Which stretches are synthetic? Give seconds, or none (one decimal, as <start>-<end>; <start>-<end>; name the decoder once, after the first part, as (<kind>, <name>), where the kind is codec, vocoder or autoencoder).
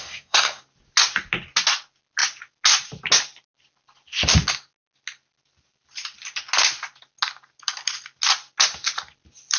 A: 0.0-0.6 (codec, SNAC)